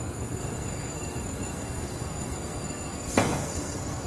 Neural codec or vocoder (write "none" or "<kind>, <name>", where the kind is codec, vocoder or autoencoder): codec, SNAC